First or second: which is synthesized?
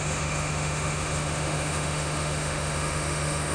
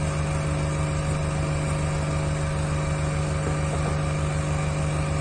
first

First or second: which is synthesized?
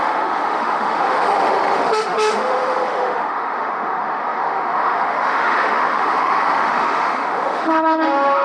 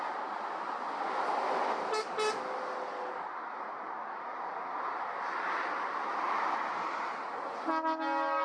first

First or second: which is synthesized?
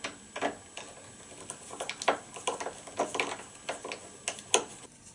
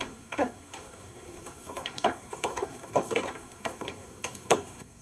second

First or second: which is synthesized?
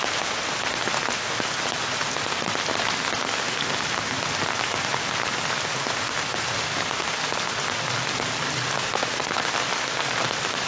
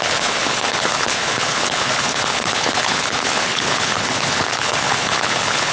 second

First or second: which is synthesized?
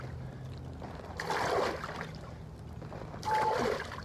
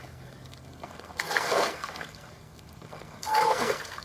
second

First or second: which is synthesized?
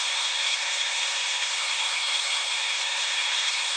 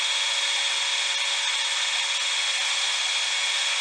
first